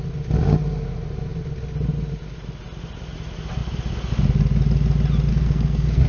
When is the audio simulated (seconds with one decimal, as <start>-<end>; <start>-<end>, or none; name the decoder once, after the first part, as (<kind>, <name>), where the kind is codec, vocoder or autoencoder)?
5.3-6.1 (codec, SNAC)